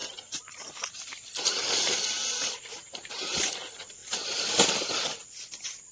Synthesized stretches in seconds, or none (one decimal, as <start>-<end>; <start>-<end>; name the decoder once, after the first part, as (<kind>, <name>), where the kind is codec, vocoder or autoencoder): none